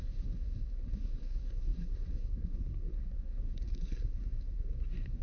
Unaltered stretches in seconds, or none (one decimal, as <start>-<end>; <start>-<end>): none